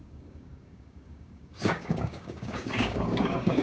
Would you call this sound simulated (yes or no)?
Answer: yes